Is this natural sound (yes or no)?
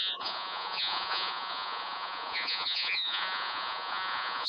no